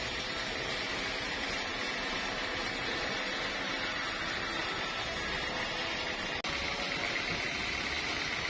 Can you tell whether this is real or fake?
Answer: real